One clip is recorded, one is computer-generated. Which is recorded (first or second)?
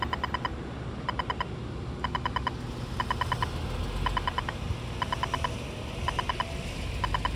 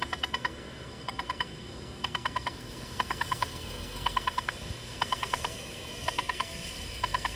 first